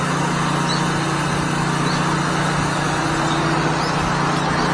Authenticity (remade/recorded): recorded